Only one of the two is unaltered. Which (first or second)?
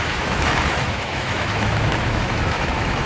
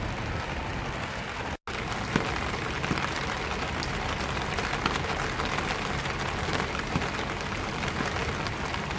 second